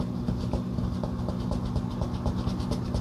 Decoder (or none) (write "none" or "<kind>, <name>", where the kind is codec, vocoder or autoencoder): none